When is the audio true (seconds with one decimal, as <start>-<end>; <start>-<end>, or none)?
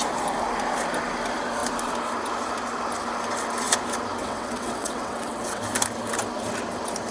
0.0-4.2; 5.6-7.1